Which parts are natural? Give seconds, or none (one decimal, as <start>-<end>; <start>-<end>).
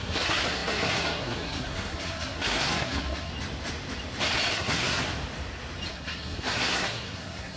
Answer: 3.3-4.5; 5.1-5.9